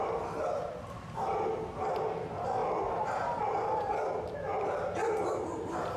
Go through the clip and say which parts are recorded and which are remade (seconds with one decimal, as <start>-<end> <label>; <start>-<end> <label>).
0.0-6.0 recorded